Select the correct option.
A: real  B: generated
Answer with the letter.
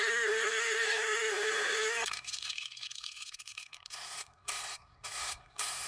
B